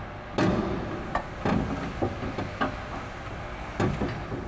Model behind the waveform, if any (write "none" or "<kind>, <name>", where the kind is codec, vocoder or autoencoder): none